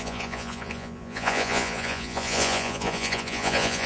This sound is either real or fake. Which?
fake